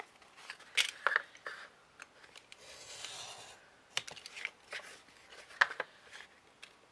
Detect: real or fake real